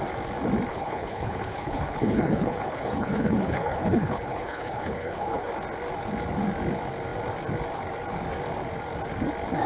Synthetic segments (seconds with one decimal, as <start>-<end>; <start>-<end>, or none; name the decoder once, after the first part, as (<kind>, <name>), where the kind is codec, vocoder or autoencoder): 0.7-5.5 (codec, HILCodec)